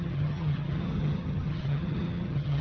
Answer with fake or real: fake